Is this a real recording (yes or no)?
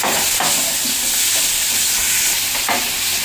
yes